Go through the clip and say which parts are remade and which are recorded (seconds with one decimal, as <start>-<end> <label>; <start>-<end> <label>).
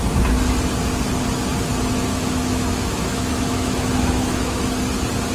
0.0-2.1 recorded; 2.1-4.6 remade; 4.6-5.3 recorded